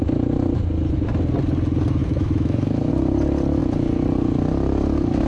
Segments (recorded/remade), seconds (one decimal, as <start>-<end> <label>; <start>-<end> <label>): 0.0-2.0 recorded; 2.0-2.9 remade; 2.9-5.3 recorded